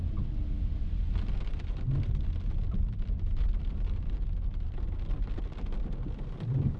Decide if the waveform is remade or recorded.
recorded